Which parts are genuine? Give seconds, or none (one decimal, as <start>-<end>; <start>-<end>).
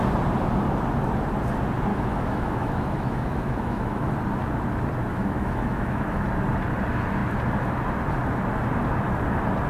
0.0-1.9; 4.1-5.1; 6.2-9.7